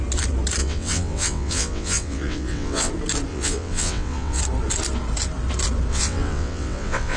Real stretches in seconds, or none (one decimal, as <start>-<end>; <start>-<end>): 0.0-0.6; 2.9-3.3; 4.4-5.9